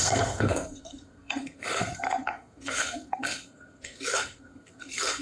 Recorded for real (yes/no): no